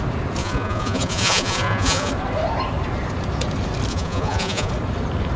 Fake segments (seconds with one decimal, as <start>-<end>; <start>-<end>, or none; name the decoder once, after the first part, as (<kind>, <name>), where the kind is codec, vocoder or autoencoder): 0.4-2.1 (vocoder, Vocos); 3.9-4.7

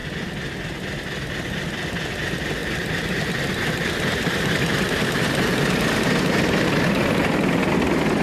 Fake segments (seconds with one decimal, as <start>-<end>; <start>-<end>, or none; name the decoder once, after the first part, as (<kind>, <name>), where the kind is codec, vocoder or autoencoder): 2.6-4.5 (vocoder, BigVGAN v2)

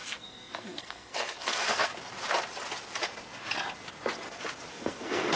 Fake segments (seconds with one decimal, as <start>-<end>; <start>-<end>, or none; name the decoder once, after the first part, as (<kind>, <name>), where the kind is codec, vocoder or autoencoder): 0.0-1.9 (codec, SNAC); 4.7-5.4

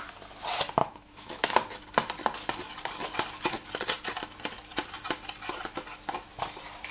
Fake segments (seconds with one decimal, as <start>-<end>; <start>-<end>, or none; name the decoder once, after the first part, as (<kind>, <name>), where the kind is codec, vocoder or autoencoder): 0.8-1.5 (autoencoder, DAC-VAE)